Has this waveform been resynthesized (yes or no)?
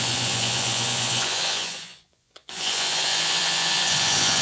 yes